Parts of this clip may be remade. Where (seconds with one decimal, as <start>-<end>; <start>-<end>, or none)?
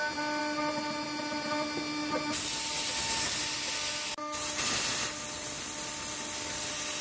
none